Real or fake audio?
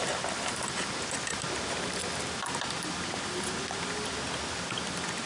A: real